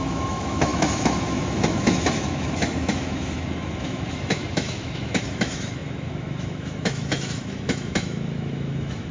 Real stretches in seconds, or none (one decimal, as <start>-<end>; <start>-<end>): none